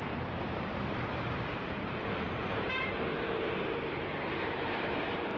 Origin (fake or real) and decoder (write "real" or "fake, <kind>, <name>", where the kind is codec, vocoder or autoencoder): fake, vocoder, BigVGAN v2